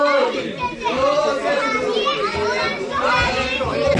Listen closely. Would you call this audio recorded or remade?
recorded